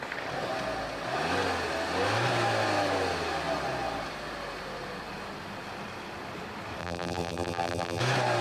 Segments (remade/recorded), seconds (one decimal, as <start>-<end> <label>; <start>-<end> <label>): 0.0-6.8 recorded; 6.8-8.0 remade; 8.0-8.4 recorded